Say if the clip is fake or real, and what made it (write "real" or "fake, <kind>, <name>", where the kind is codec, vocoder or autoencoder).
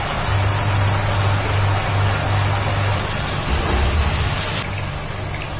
real